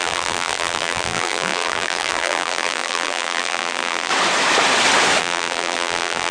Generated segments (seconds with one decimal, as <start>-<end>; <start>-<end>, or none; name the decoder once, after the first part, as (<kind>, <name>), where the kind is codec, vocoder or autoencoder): 0.0-4.1 (vocoder, BigVGAN v2); 5.2-6.3